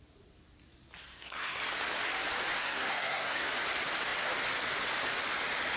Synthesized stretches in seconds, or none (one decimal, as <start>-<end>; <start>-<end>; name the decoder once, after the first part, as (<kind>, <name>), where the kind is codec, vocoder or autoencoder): 1.1-1.6 (codec, SNAC); 2.6-3.5